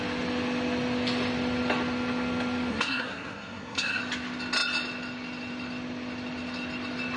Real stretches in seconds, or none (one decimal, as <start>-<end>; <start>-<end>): 0.0-2.7; 4.0-7.2